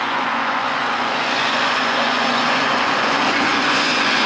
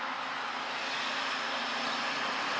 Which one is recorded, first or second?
second